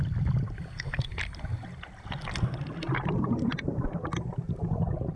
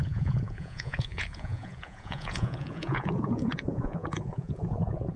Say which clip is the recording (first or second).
first